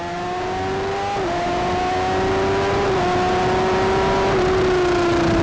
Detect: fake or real real